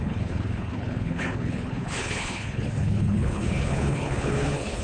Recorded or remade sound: remade